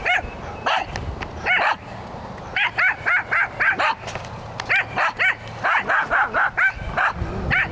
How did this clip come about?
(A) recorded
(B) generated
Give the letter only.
A